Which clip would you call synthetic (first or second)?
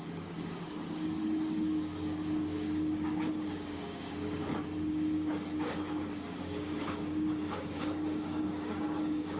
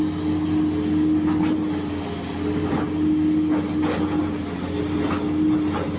first